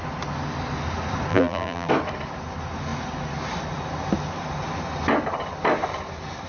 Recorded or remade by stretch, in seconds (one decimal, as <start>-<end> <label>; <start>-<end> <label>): 0.0-1.3 recorded; 1.3-1.9 remade; 1.9-6.5 recorded